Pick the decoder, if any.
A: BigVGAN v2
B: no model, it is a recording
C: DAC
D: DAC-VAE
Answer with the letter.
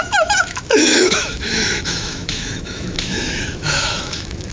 D